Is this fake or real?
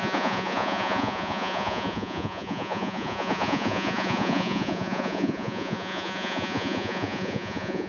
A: fake